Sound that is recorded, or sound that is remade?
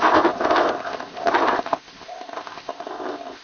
remade